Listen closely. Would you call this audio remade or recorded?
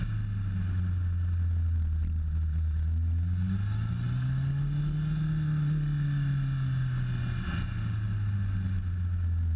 recorded